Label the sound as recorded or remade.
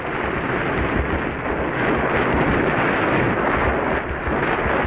recorded